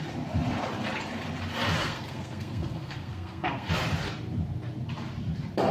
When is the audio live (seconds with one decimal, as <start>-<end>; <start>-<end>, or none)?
0.0-1.8; 3.7-5.7